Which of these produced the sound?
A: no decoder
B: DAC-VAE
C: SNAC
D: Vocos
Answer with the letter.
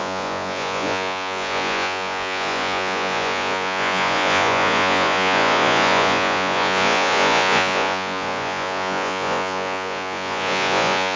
D